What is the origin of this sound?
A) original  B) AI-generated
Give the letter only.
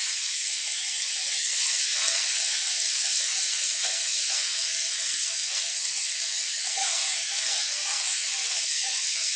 B